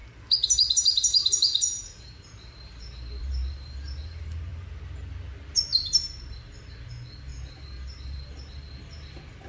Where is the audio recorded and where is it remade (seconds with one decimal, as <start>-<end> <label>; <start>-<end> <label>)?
0.0-4.8 remade; 4.8-7.3 recorded; 7.3-8.3 remade; 8.3-9.5 recorded